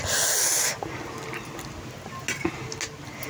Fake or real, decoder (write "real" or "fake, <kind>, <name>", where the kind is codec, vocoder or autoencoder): real